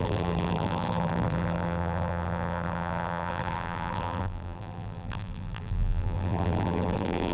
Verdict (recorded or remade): remade